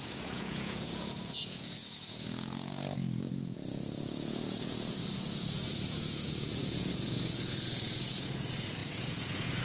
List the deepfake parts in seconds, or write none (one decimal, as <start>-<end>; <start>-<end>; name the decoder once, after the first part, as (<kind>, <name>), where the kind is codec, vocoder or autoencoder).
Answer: 0.0-9.6 (vocoder, Vocos)